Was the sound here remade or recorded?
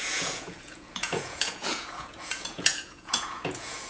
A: remade